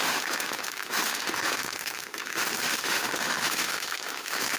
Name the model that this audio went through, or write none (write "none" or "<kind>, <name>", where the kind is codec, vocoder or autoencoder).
autoencoder, DAC-VAE